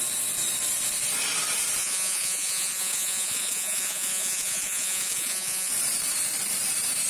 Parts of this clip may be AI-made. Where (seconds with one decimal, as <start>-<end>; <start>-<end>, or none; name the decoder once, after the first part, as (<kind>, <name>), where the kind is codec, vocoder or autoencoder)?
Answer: 1.8-5.7 (vocoder, Vocos)